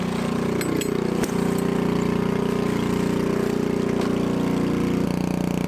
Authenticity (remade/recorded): recorded